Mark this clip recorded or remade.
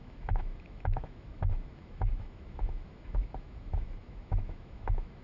remade